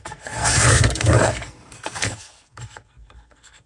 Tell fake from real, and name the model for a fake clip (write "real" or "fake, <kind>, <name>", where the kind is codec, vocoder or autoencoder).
fake, codec, SNAC